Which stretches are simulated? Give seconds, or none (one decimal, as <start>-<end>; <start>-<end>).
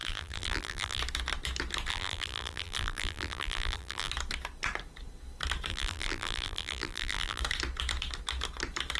0.0-1.0; 1.9-4.1; 5.7-7.4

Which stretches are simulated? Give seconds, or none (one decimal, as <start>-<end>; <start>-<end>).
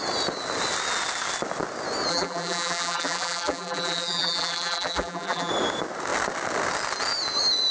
2.1-5.5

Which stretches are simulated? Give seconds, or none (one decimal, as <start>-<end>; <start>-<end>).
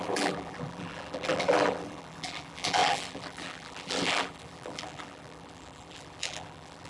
0.0-6.9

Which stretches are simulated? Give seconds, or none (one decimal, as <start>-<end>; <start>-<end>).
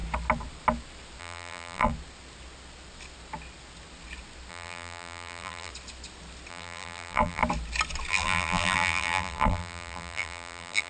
1.2-1.9; 4.5-5.7; 6.5-7.4; 8.1-10.9